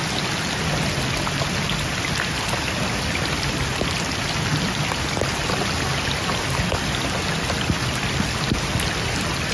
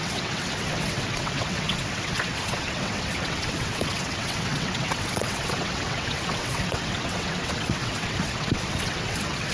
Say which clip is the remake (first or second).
second